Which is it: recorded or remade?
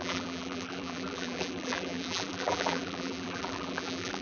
remade